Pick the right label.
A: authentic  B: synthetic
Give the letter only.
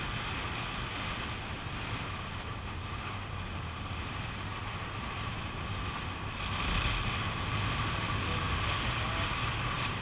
A